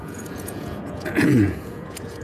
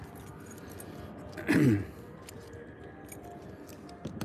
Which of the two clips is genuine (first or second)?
second